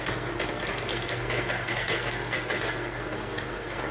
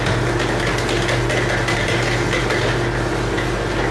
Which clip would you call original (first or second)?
second